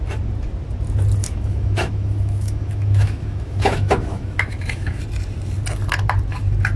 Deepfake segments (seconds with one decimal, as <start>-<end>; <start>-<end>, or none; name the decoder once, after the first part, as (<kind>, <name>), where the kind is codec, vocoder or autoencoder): 1.2-5.0 (autoencoder, DAC-VAE)